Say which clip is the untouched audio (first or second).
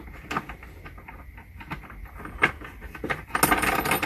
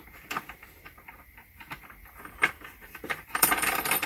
first